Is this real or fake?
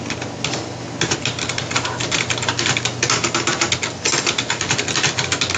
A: real